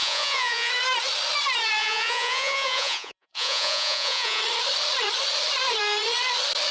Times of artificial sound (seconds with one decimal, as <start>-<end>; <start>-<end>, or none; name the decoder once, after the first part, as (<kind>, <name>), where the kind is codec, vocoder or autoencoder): 0.0-0.7 (vocoder, Vocos); 1.8-4.4